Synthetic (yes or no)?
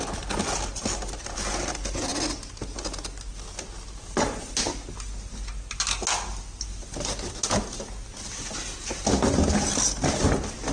no